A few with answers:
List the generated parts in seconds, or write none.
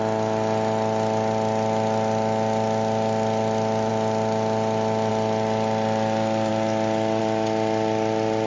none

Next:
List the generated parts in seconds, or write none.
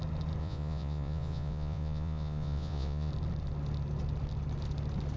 0.4-3.1